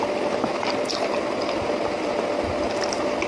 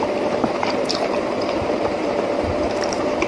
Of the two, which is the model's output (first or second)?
second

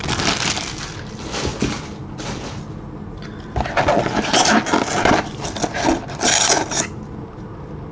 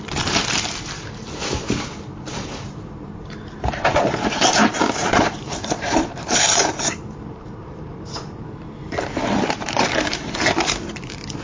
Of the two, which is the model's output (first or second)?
second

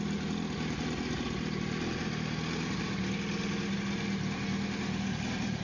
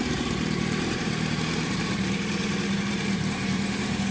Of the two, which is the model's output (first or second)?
second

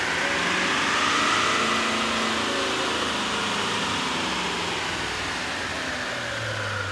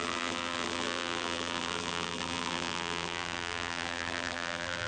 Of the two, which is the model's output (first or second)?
second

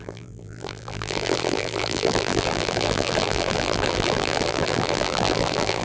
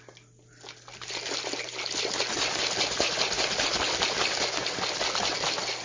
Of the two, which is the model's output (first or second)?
first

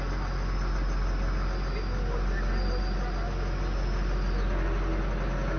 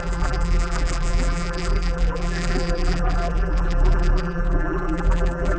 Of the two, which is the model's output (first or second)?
second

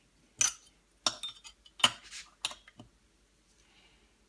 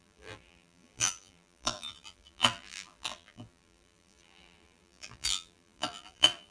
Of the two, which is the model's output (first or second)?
second